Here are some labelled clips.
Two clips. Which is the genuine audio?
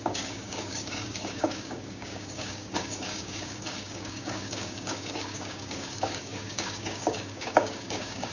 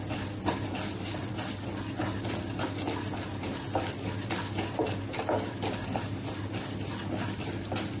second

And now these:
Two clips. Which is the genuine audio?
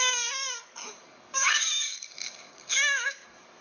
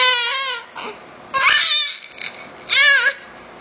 second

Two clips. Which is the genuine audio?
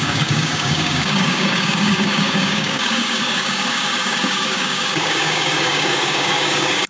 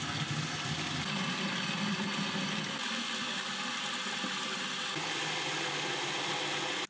second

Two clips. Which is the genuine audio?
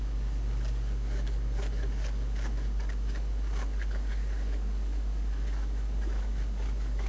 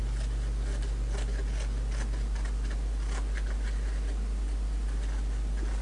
second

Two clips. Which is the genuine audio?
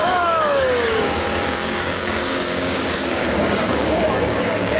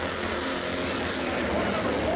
second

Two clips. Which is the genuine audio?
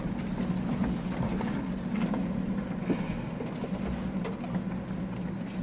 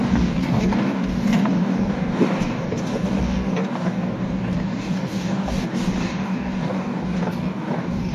first